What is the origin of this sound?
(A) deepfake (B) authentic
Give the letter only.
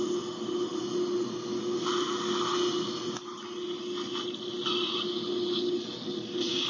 B